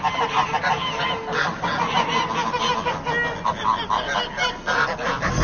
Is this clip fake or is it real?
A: real